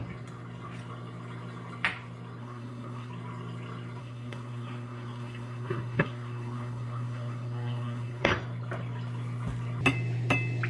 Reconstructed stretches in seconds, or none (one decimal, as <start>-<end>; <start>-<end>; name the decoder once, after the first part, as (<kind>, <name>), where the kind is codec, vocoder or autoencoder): 2.4-3.1 (codec, SNAC); 4.0-8.3